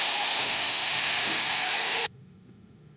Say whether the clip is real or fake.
fake